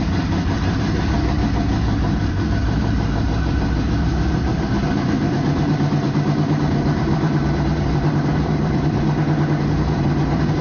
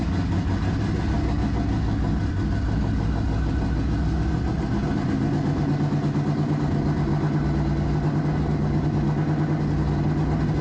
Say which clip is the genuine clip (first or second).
second